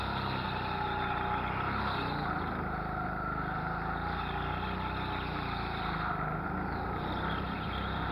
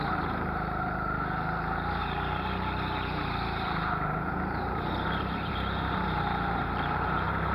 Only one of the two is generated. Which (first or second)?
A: second